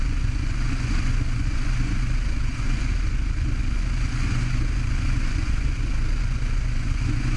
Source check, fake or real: fake